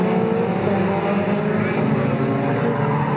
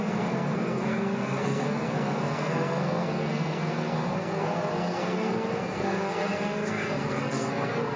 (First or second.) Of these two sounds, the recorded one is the first